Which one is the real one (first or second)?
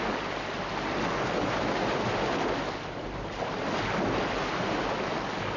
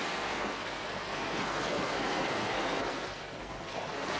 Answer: first